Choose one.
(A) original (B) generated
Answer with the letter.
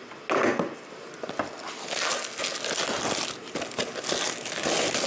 A